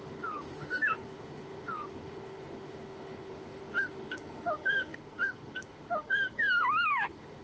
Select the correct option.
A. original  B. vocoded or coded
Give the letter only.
B